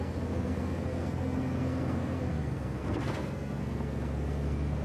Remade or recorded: remade